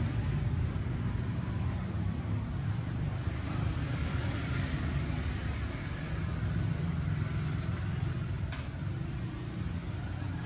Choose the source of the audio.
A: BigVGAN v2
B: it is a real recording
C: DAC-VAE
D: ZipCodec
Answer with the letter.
B